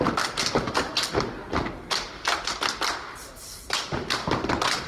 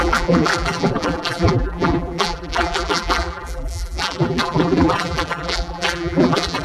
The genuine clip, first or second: first